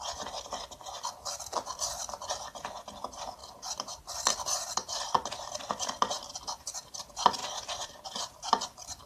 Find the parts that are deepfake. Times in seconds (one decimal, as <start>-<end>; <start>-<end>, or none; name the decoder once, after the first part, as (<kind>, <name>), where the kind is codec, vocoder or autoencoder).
1.5-2.3 (vocoder, BigVGAN v2); 3.4-6.4; 7.4-7.9